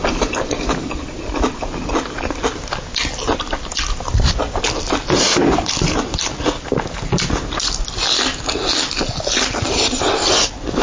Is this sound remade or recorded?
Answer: recorded